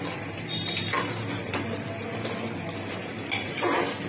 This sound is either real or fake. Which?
real